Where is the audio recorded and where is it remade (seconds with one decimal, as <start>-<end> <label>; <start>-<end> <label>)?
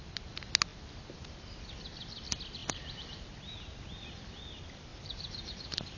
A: 0.0-2.6 recorded; 2.6-3.4 remade; 3.4-4.9 recorded; 4.9-5.5 remade; 5.5-6.0 recorded